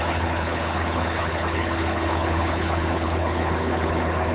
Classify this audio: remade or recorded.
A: remade